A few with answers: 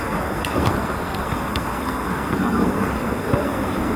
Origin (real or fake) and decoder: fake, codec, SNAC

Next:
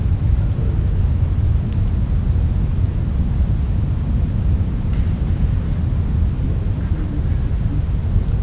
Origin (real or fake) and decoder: real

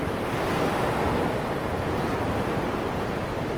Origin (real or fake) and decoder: real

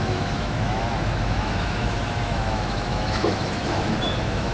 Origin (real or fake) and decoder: fake, autoencoder, DAC-VAE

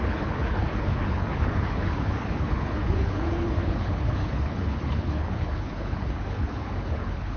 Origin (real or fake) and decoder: fake, codec, HILCodec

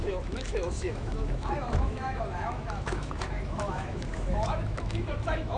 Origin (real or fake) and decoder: fake, autoencoder, DAC-VAE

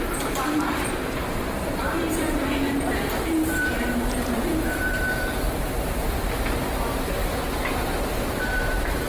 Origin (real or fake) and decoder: fake, vocoder, BigVGAN v2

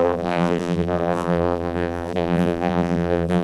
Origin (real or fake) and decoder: fake, vocoder, BigVGAN v2